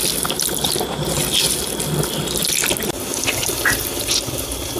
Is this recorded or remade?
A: recorded